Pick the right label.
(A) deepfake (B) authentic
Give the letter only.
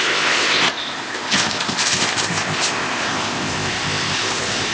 A